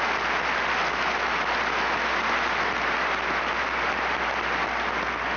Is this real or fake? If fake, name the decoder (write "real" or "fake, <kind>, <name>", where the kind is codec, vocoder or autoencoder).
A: real